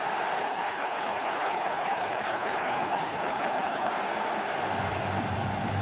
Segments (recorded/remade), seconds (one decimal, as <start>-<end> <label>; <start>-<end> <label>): 0.0-0.4 recorded; 0.4-3.9 remade; 3.9-5.8 recorded